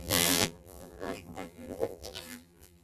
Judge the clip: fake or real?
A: fake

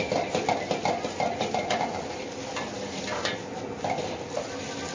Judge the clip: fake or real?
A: real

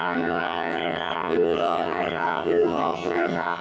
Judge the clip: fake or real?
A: fake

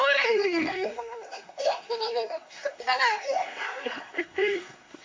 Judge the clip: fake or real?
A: fake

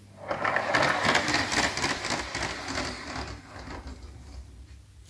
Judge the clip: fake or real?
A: real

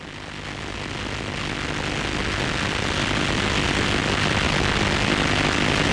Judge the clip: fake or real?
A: real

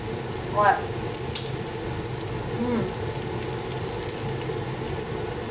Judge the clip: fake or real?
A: real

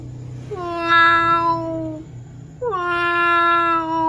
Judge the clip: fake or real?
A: real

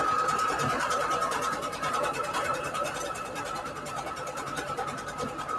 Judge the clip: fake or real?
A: fake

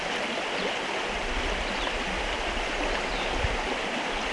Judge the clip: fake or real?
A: real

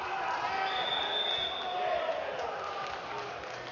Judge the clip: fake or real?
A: real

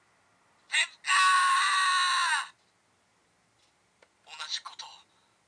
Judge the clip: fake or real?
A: real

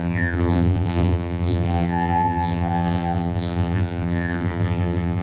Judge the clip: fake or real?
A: fake